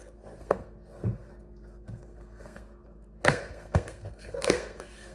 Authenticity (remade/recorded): remade